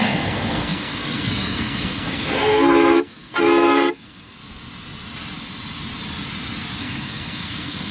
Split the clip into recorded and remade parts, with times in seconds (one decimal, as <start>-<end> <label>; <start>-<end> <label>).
0.0-4.4 remade; 4.4-6.8 recorded; 6.8-7.9 remade